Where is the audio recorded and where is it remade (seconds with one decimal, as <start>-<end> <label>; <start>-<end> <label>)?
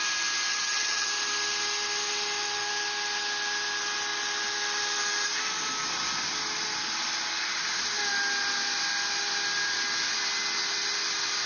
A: 0.0-0.5 recorded; 0.5-1.1 remade; 1.1-11.5 recorded